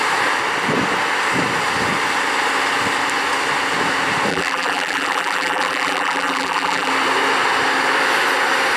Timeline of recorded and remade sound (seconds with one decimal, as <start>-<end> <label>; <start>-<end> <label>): 0.0-4.3 recorded; 4.3-6.9 remade; 6.9-8.8 recorded